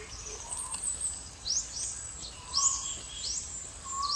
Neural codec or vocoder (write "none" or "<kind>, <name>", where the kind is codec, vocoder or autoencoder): none